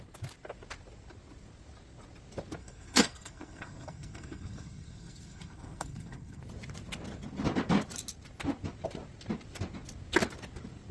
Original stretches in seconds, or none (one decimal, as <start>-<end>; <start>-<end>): 0.0-2.6; 6.4-10.9